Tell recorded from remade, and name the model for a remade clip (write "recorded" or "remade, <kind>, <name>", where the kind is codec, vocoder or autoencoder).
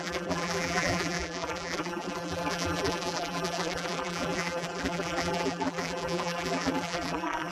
remade, vocoder, BigVGAN v2